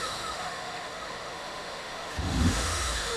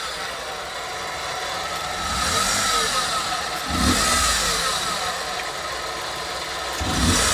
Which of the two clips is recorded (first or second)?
second